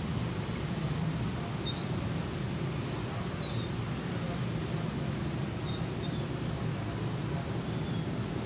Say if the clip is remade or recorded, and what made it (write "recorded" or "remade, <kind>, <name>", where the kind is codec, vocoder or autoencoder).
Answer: recorded